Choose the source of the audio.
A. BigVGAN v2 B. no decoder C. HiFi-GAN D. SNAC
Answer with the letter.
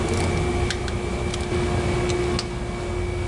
B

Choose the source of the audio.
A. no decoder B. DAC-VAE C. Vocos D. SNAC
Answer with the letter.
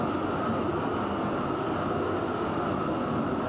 A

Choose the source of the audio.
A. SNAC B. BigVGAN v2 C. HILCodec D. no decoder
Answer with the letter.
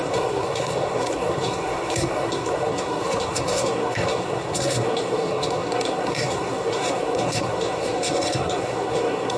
A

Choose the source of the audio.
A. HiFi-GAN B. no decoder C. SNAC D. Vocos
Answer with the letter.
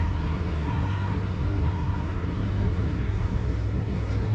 C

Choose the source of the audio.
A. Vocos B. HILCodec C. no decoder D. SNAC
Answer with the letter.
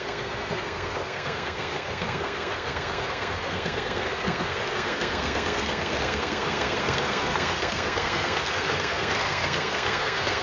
D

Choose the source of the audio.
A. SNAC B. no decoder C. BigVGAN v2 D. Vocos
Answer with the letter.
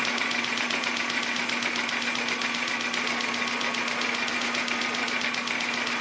B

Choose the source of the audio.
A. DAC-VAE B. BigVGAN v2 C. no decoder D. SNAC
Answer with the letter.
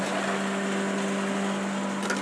C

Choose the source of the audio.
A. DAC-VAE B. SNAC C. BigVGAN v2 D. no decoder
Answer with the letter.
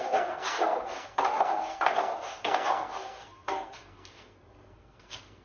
B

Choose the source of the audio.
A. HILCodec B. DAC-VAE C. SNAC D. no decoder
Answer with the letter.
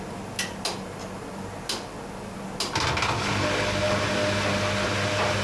D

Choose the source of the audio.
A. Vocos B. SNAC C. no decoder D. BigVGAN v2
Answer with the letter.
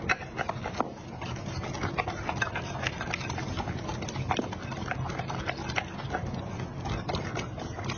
C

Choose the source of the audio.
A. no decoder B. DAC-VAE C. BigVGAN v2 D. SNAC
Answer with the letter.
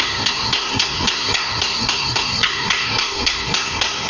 D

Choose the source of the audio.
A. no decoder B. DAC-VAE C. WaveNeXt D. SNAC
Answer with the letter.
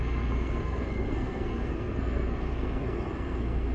D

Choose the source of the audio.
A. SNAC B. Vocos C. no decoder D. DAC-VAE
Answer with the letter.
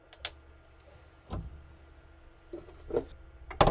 C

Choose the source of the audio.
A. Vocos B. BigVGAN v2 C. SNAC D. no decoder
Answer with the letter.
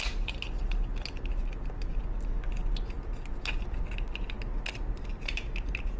D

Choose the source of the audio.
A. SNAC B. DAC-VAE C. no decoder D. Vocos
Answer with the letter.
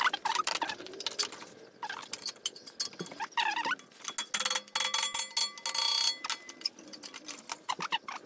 C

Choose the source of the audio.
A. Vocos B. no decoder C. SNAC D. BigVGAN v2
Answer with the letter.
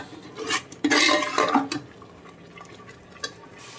B